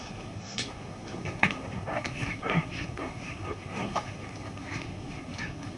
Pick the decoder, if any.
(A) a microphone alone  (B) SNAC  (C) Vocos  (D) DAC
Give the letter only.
B